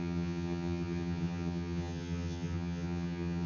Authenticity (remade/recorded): remade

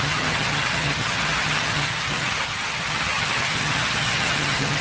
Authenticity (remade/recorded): remade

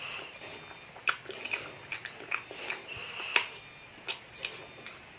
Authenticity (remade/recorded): recorded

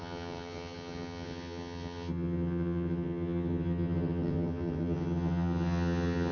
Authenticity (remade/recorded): remade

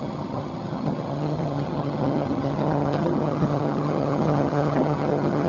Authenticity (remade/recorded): remade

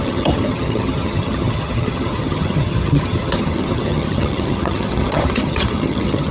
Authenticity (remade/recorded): remade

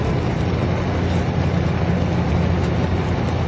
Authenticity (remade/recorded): recorded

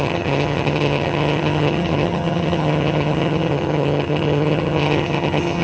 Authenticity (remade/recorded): remade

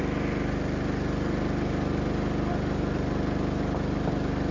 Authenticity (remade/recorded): recorded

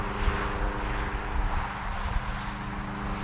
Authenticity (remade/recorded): recorded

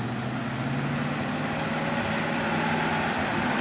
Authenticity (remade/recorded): recorded